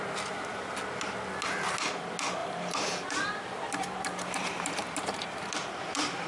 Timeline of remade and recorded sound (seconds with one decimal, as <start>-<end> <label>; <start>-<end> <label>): 0.0-2.4 recorded; 2.4-6.3 remade